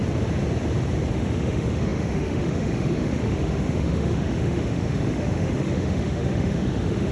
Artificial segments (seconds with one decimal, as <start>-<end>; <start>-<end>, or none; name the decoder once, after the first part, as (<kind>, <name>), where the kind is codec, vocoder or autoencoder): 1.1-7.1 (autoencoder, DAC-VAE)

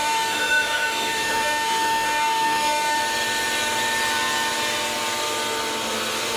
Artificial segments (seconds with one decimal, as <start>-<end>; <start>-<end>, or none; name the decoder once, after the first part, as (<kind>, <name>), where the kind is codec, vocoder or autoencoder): 0.0-3.0 (autoencoder, DAC-VAE)

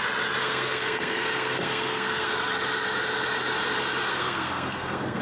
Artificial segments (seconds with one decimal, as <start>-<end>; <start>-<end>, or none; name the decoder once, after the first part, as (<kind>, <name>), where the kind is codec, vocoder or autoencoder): 0.4-2.3 (codec, SNAC); 4.1-5.2

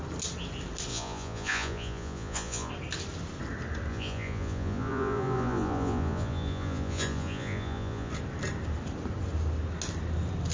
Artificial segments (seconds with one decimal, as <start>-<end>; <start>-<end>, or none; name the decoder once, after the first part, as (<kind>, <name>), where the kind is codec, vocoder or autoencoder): 0.9-2.7 (vocoder, Vocos); 3.9-8.1

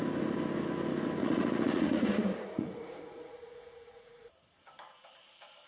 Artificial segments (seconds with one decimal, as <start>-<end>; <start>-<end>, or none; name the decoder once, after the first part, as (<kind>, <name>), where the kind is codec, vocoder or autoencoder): 1.2-4.3 (vocoder, Vocos)